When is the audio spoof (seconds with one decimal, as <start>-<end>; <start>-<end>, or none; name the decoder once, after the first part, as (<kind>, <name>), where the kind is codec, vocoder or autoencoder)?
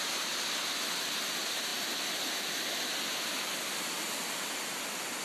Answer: none